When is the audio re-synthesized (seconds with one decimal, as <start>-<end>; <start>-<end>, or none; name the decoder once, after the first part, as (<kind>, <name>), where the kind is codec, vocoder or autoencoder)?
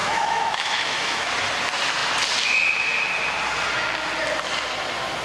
0.0-1.3 (autoencoder, DAC-VAE)